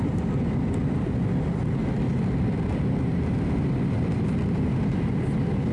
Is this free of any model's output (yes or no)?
yes